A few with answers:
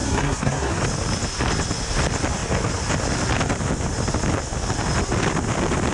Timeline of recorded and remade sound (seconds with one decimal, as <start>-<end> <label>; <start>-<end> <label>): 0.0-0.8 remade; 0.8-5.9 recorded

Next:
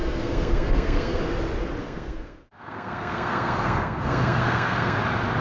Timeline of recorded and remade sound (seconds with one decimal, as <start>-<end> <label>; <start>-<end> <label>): 0.0-1.2 remade; 1.2-1.8 recorded; 1.8-5.0 remade; 5.0-5.4 recorded

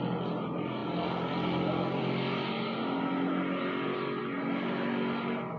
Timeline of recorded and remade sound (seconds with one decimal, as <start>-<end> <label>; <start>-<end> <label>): 0.0-5.6 recorded